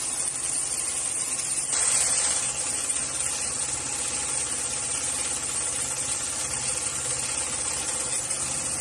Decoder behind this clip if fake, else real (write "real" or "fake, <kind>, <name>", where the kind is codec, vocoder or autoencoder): real